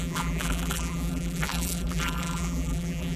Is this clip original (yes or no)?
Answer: no